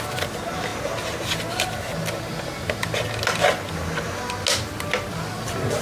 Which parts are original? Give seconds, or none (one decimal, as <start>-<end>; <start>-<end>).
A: 0.0-5.8